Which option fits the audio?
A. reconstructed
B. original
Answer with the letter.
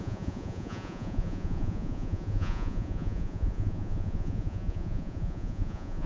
A